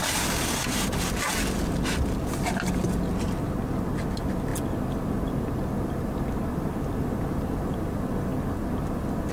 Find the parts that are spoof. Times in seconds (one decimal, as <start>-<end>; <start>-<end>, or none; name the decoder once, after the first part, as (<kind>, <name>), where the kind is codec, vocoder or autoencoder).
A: none